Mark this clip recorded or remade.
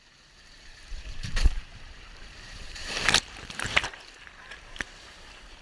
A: remade